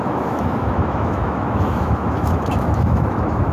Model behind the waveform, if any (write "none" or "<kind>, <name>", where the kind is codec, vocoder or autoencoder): autoencoder, DAC-VAE